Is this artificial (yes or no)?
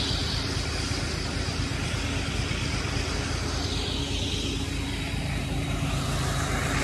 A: no